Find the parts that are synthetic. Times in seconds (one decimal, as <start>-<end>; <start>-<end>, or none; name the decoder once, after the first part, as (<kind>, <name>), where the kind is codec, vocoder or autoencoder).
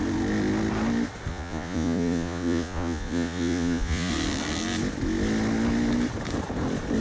1.3-4.1 (vocoder, Vocos)